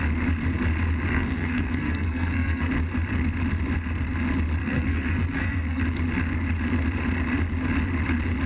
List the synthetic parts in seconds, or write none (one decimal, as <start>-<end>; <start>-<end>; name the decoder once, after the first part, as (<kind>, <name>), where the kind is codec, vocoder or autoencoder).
1.1-2.7 (codec, SNAC); 4.6-5.8